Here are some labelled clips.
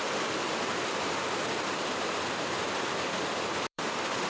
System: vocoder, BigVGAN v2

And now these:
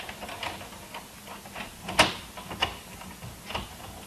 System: none